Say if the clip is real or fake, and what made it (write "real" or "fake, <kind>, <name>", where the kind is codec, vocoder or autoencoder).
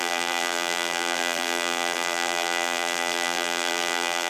fake, vocoder, BigVGAN v2